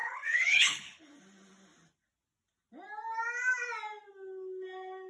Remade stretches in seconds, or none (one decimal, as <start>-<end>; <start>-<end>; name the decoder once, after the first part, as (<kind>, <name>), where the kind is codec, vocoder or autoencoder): 0.0-1.1 (codec, HILCodec)